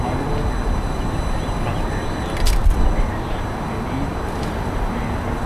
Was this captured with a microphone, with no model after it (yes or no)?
no